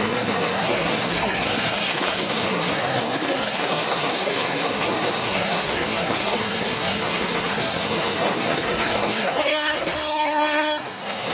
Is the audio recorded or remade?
remade